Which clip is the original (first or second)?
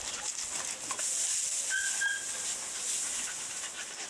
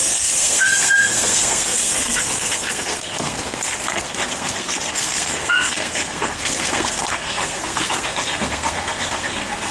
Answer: first